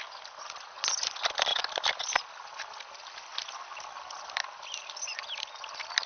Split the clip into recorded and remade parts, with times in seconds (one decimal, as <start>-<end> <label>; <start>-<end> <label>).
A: 0.0-6.1 recorded